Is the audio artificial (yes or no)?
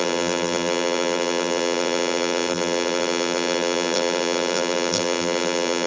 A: yes